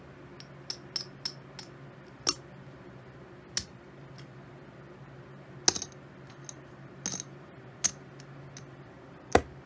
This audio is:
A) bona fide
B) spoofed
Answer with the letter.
A